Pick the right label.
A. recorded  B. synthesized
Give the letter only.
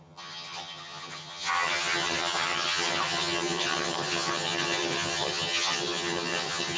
B